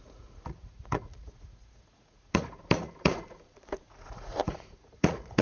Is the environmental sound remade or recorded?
remade